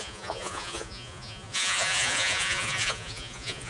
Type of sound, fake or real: fake